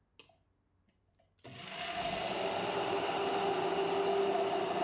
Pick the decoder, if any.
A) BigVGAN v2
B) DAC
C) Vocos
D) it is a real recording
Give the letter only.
D